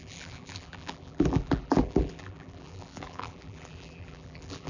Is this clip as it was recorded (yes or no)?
no